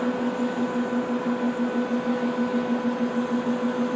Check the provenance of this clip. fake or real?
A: real